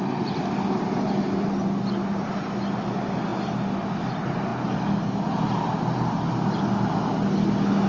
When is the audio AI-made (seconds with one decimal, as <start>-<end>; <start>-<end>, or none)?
none